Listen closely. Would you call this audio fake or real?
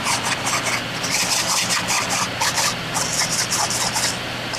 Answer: real